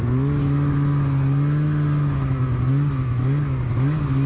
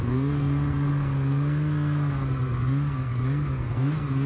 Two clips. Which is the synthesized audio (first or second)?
second